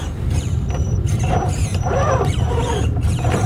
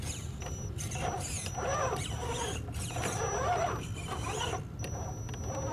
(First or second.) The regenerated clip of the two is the first